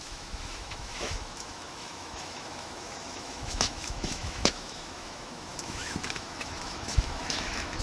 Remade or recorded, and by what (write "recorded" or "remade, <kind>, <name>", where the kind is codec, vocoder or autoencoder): remade, autoencoder, DAC-VAE